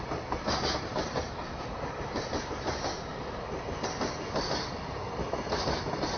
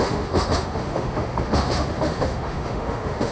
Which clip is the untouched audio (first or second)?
first